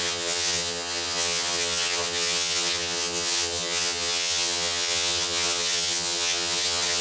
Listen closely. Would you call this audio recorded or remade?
remade